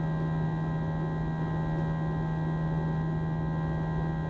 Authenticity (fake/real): real